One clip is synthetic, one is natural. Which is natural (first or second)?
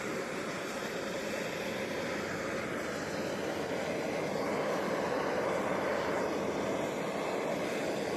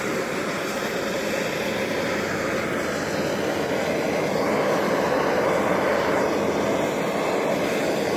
second